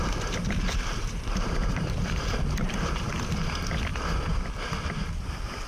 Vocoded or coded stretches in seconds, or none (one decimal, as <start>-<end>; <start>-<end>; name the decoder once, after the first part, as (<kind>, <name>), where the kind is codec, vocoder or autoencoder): 0.4-3.1 (vocoder, BigVGAN v2); 3.9-4.4